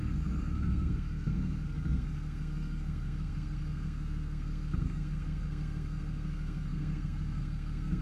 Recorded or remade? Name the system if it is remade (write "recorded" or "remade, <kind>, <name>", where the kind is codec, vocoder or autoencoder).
remade, codec, SNAC